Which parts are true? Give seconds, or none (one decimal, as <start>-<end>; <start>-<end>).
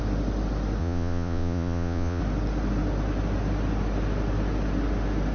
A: 0.0-0.8; 2.2-5.3